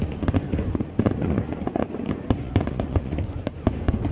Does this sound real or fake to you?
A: fake